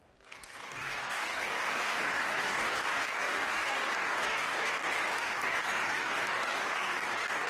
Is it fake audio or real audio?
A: fake